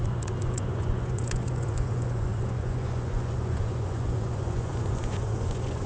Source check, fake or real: fake